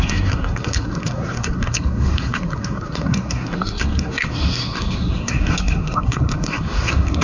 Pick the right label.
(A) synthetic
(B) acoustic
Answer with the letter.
A